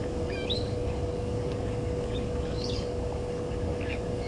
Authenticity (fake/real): fake